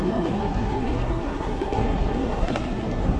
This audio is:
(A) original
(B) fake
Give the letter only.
B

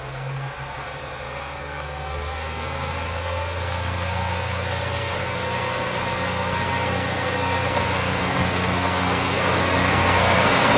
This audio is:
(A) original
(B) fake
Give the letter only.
B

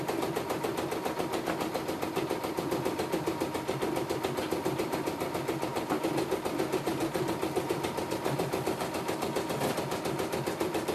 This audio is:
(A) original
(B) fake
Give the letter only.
A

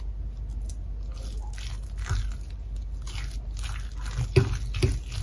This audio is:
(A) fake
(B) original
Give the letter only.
B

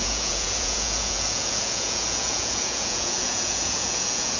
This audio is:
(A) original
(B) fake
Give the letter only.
B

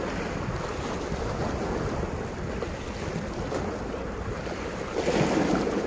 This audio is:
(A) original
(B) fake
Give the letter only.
A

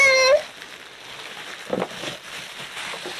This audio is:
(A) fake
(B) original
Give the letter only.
B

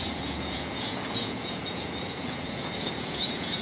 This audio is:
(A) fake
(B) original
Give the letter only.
A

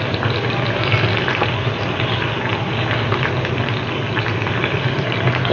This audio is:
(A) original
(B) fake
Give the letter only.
A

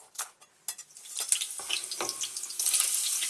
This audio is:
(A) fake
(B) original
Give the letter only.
B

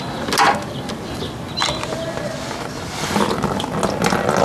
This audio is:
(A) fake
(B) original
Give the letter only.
B